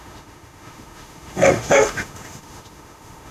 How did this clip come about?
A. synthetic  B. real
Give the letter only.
A